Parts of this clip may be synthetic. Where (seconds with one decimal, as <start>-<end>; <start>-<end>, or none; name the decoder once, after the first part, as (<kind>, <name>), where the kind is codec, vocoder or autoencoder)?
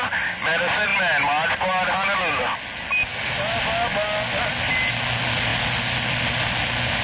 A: none